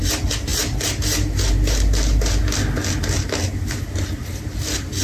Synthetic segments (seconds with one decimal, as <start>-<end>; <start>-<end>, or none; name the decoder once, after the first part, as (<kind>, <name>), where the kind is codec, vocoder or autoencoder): none